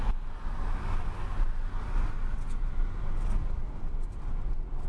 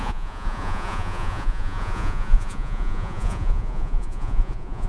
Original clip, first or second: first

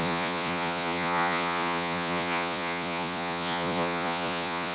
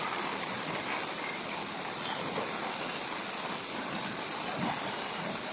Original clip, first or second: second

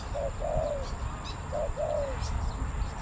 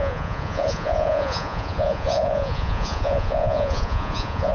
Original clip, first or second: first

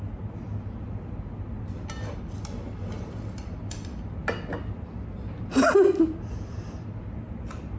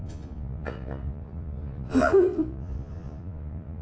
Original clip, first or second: first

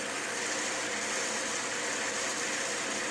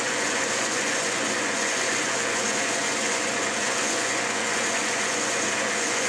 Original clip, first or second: first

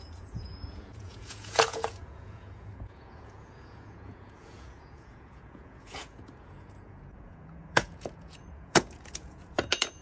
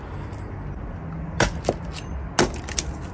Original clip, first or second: second